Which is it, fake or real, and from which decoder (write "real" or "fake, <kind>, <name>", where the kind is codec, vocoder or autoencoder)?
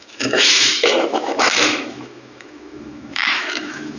fake, autoencoder, DAC-VAE